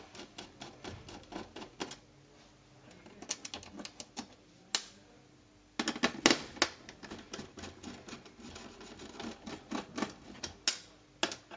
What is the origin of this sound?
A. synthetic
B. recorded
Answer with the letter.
B